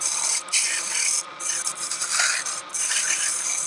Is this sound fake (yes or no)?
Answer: yes